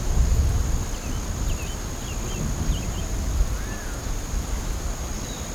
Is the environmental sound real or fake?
real